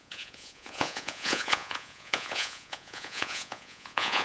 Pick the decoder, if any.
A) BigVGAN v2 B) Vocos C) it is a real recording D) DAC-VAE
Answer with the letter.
B